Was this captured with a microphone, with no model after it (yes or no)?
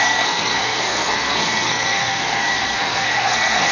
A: no